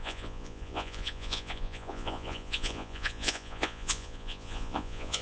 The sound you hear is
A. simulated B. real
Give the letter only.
A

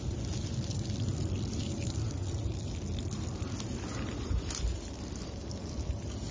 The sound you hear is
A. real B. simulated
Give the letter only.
A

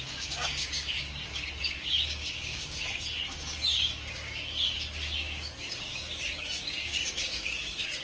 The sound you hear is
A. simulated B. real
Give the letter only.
A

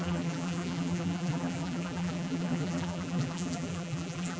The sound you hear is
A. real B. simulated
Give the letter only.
B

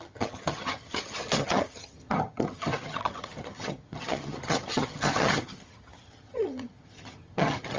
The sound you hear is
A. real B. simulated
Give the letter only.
B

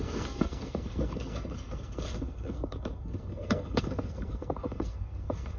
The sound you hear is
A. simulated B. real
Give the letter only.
A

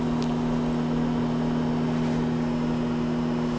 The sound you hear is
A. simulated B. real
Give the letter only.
B